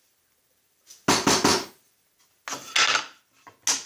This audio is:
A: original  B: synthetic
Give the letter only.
A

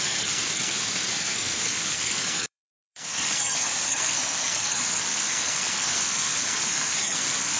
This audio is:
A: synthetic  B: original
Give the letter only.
A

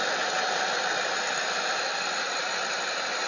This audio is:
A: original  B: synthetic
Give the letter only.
A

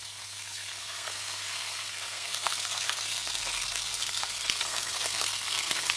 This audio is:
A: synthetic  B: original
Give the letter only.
A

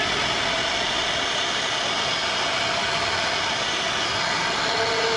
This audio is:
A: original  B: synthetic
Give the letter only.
A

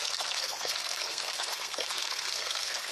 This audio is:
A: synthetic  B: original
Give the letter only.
A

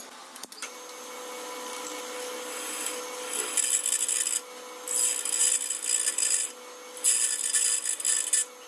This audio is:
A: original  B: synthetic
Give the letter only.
A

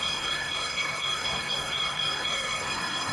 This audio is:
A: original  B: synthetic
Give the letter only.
B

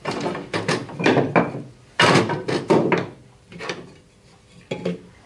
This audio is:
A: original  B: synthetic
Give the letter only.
A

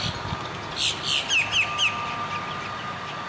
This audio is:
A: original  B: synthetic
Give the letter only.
A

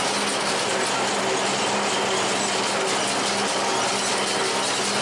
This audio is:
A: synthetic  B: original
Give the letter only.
B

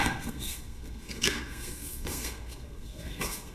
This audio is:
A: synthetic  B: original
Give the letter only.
A